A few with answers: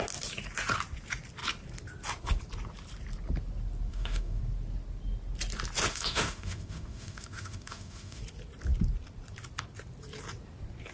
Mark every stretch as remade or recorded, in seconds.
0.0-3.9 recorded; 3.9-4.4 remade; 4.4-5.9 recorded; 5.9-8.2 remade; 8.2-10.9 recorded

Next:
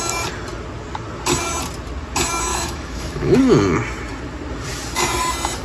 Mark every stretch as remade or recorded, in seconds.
0.0-2.5 recorded; 2.5-3.4 remade; 3.4-5.6 recorded

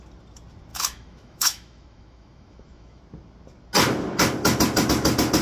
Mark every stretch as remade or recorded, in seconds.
0.0-0.7 recorded; 0.7-3.0 remade; 3.0-5.4 recorded